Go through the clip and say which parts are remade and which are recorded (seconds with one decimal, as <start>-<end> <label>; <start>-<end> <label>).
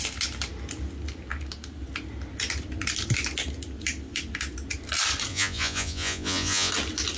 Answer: 0.0-5.3 recorded; 5.3-6.7 remade; 6.7-7.2 recorded